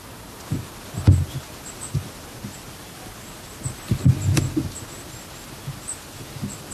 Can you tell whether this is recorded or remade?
recorded